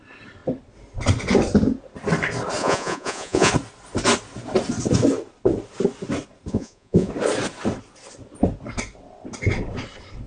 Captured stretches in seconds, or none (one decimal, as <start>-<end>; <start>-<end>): 0.0-2.6; 3.5-6.5; 7.1-10.3